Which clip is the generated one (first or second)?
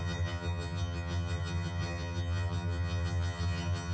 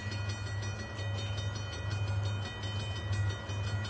first